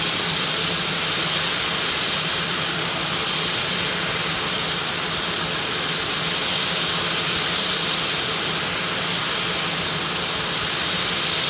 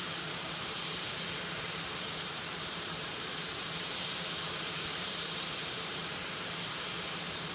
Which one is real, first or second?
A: first